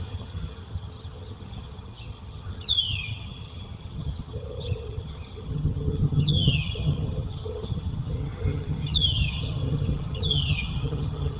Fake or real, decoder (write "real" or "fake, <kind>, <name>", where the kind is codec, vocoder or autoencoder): fake, vocoder, HiFi-GAN